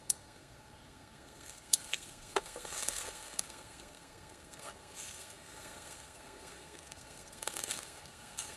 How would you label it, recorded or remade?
remade